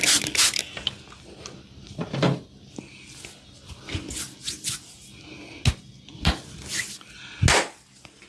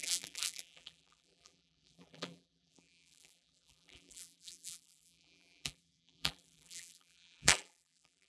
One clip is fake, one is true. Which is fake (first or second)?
second